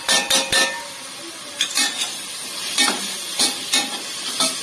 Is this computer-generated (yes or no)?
no